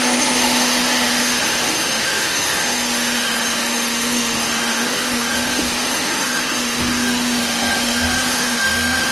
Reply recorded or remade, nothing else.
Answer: remade